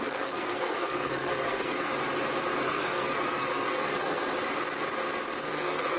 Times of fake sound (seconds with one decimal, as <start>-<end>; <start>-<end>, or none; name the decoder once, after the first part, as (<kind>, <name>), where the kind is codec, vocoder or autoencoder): 0.0-1.9 (codec, SNAC); 2.6-4.2; 5.4-6.0